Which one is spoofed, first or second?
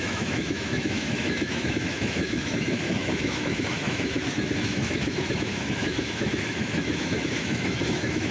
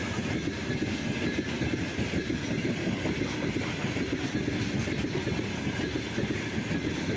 first